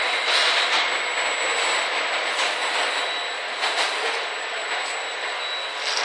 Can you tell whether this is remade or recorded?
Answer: recorded